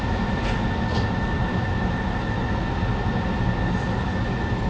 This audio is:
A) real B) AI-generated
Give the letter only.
A